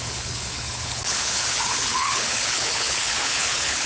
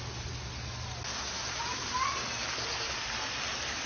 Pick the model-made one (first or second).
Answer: first